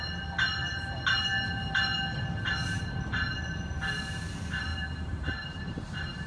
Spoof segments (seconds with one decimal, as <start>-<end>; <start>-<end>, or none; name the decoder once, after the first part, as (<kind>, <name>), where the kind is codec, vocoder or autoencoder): 4.7-6.3 (vocoder, BigVGAN v2)